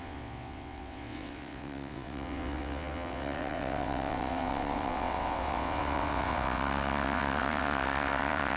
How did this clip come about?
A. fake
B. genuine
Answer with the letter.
A